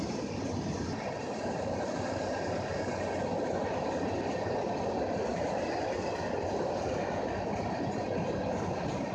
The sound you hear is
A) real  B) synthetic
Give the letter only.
A